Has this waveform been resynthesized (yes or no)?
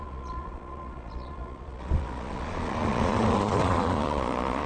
yes